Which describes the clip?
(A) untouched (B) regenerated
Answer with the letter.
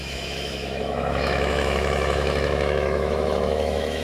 B